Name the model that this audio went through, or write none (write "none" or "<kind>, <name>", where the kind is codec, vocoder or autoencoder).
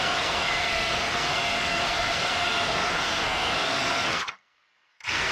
codec, SNAC